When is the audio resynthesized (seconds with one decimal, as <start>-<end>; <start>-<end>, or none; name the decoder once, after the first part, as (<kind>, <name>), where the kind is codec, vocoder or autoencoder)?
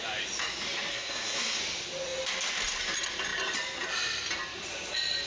0.9-1.6 (codec, SNAC)